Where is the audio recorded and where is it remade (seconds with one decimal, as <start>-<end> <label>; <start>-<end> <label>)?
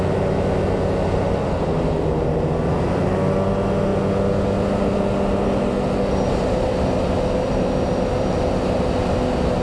0.0-9.6 recorded